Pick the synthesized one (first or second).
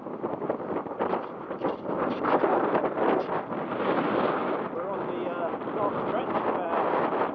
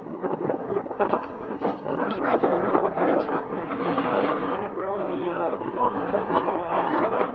second